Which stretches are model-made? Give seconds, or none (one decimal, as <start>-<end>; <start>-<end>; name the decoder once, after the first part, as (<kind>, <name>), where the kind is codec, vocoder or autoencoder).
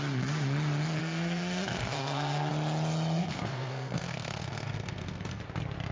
1.0-2.5 (codec, SNAC); 3.2-5.4